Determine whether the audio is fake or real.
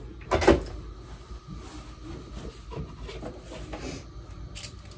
real